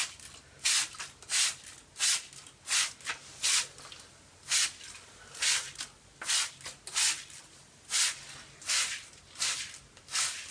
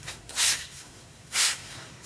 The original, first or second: first